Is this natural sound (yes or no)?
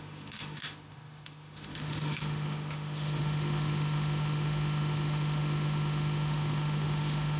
no